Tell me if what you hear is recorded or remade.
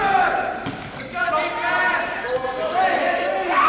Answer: recorded